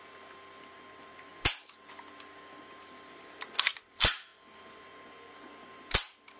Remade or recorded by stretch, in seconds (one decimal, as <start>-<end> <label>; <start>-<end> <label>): 0.0-6.4 recorded